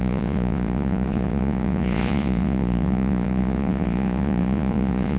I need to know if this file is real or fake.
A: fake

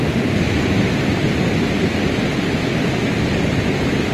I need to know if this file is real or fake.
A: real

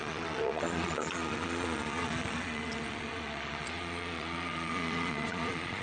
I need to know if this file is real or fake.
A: fake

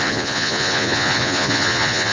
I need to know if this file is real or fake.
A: fake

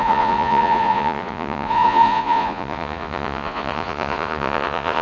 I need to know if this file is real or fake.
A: fake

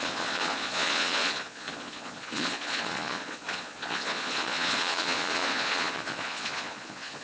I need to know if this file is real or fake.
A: fake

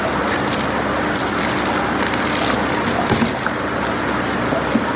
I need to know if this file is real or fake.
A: real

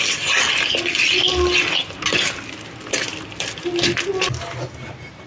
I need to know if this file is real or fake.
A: real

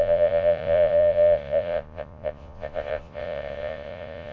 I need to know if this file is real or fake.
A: fake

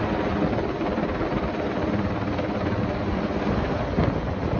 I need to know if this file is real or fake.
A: real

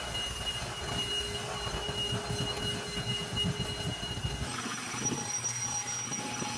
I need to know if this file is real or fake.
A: real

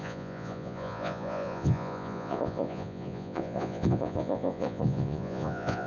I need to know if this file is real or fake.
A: fake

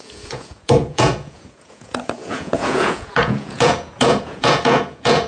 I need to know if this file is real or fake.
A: fake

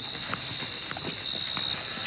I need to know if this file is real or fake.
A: real